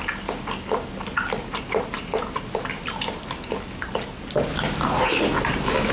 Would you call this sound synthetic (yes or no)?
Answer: no